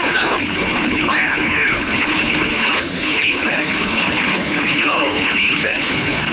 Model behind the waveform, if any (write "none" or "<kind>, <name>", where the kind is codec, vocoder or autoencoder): codec, HILCodec